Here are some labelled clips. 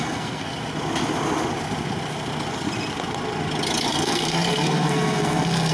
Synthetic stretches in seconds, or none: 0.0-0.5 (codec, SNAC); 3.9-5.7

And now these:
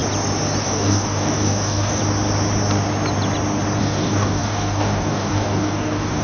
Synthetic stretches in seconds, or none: 0.6-2.0 (codec, DAC); 3.8-6.2

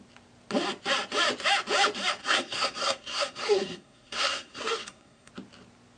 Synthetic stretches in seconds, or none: 2.2-5.3 (codec, SNAC)